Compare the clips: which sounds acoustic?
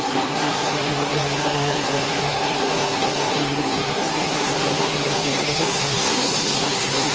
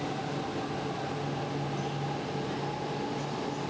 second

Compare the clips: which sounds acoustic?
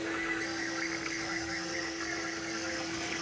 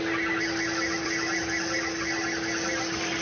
second